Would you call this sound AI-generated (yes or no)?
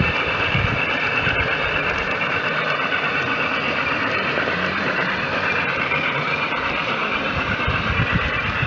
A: yes